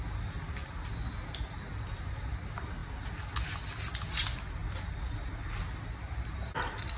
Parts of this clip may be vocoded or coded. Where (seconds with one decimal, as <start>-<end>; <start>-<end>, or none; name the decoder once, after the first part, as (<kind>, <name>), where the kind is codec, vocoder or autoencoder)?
none